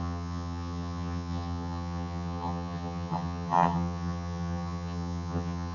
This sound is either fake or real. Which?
fake